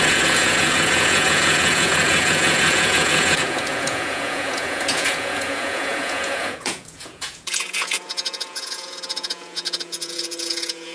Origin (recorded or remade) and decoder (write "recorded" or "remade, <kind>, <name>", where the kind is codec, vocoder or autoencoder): remade, vocoder, Vocos